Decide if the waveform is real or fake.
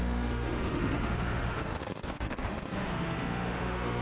fake